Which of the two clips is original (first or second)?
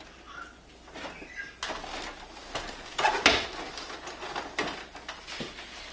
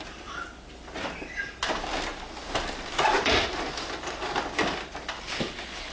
first